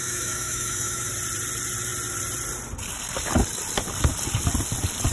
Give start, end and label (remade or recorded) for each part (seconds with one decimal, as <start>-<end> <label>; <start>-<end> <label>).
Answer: 0.0-1.1 remade; 1.1-5.1 recorded